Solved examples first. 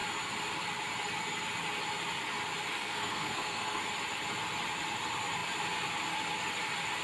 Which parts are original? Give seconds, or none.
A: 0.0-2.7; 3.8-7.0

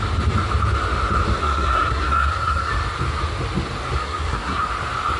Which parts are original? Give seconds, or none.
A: 0.0-1.4; 2.7-4.0; 4.7-5.2